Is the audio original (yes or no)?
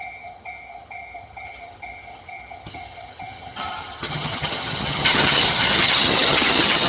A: no